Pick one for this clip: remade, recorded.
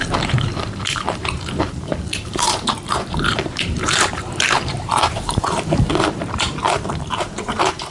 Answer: remade